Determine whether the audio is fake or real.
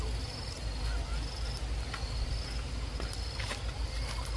real